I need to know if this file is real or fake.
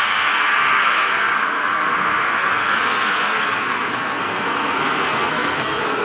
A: fake